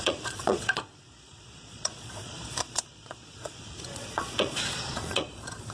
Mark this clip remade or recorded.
remade